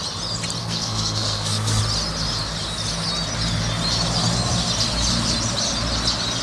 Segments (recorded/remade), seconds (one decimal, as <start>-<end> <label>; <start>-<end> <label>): 0.0-0.6 recorded; 0.6-1.8 remade; 1.8-6.4 recorded